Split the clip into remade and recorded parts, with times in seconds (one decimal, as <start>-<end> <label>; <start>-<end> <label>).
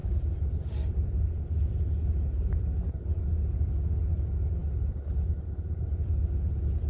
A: 0.0-4.1 remade; 4.1-4.6 recorded; 4.6-5.3 remade; 5.3-6.9 recorded